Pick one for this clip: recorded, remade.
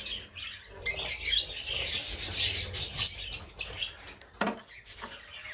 recorded